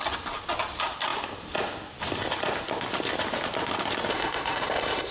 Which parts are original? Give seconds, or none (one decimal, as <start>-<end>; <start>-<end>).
0.0-4.1